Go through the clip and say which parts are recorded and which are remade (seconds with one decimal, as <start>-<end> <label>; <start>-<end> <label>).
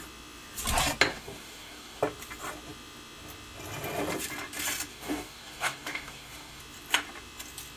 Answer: 0.0-1.1 recorded; 1.1-2.0 remade; 2.0-4.9 recorded; 4.9-6.6 remade; 6.6-7.8 recorded